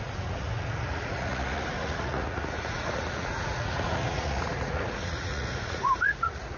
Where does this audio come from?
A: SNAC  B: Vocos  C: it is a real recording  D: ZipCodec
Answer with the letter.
B